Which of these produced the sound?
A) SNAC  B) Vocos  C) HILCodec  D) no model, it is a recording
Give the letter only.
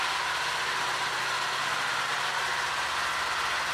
D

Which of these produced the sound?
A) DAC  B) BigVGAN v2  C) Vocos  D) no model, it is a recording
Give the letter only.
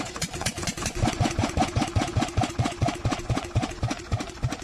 C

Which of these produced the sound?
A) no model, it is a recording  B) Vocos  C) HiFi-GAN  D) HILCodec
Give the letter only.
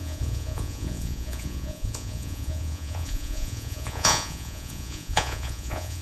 B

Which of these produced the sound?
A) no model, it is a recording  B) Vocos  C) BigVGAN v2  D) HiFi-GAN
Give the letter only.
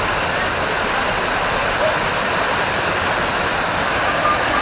A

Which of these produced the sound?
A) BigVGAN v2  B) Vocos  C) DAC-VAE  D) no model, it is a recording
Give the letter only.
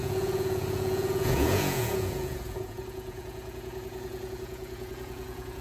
B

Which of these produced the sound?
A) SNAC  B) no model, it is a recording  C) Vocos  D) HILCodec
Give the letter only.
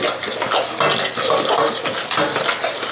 B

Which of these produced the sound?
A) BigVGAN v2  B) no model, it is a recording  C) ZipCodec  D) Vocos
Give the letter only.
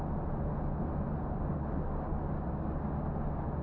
B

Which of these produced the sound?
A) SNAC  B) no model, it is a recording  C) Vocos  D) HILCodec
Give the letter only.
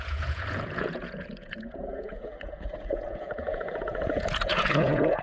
C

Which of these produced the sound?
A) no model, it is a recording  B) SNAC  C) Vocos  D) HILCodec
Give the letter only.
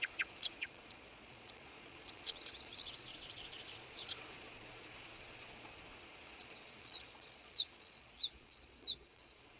C